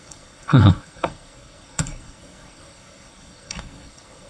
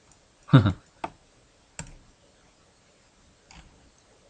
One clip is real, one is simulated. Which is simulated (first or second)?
first